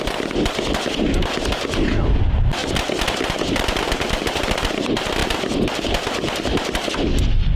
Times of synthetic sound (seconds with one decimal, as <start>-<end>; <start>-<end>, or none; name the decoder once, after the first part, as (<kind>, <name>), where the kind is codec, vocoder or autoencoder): none